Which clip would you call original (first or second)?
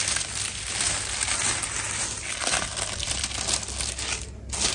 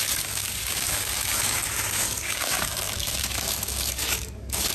first